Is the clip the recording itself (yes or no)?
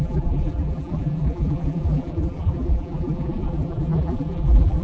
no